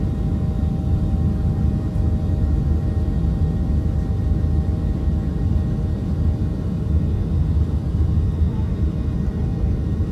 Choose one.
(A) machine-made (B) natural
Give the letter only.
A